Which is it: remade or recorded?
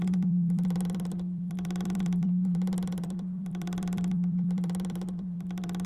remade